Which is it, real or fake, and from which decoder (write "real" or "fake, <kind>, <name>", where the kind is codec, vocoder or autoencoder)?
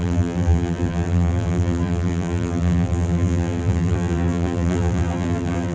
fake, vocoder, BigVGAN v2